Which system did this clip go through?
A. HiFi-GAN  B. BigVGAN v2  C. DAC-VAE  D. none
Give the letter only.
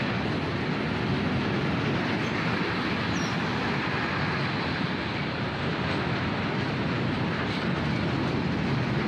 D